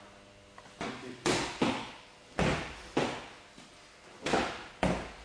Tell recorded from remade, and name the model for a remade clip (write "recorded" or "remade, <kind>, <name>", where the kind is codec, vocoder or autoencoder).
recorded